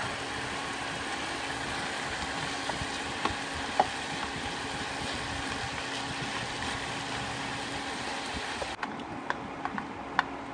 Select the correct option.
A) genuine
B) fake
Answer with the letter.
A